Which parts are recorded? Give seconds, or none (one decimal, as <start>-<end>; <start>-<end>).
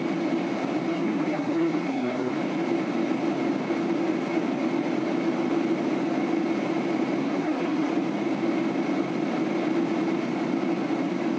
0.0-0.9; 2.3-7.2; 7.9-11.4